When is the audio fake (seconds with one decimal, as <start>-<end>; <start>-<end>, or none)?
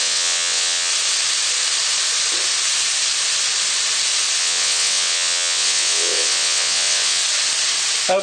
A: 0.0-0.9; 4.4-7.2